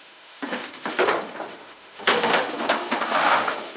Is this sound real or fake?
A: fake